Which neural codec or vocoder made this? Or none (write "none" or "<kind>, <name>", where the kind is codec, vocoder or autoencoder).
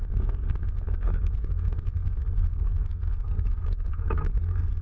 codec, SNAC